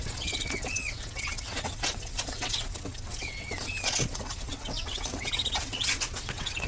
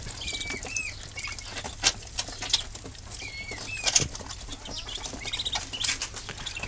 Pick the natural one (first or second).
second